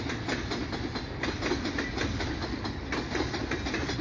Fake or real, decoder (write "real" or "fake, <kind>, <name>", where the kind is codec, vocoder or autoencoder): real